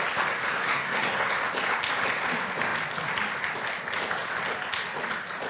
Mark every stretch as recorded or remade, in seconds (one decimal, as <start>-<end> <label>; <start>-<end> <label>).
0.0-0.5 recorded; 0.5-1.3 remade; 1.3-5.5 recorded